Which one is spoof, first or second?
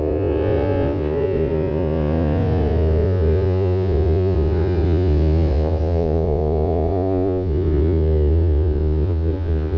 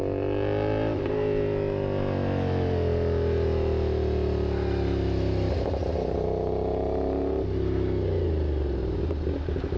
first